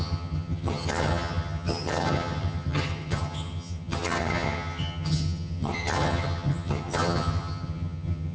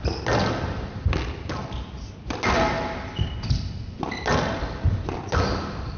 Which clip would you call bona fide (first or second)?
second